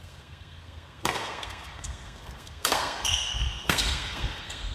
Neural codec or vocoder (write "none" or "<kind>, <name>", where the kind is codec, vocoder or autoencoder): codec, SNAC